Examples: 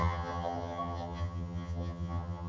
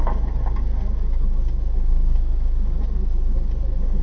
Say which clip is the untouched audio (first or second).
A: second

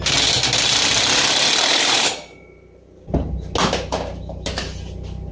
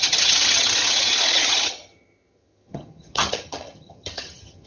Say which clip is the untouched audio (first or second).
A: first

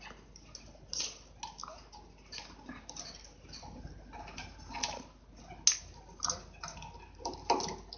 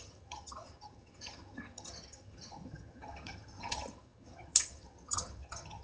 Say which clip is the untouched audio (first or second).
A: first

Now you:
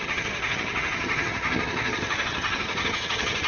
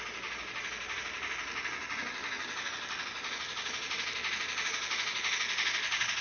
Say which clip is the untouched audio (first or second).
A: second